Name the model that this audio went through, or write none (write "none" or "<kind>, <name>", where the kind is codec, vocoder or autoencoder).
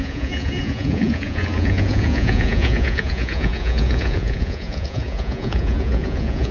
vocoder, Vocos